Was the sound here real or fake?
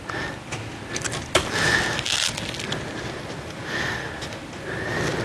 real